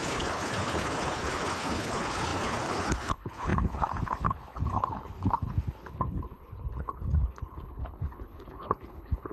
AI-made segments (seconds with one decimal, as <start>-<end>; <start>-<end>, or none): 0.0-9.3